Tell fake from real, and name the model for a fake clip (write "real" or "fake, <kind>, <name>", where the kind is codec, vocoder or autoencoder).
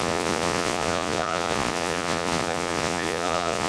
fake, vocoder, Vocos